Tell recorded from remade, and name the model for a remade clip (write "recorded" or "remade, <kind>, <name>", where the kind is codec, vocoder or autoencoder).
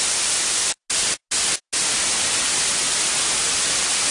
recorded